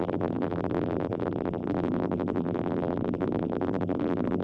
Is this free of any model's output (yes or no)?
no